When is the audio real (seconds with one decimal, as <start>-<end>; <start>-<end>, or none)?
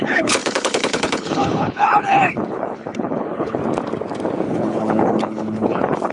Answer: 3.6-4.5